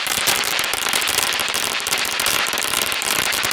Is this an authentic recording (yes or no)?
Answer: no